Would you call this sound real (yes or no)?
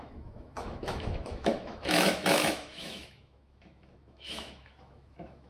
no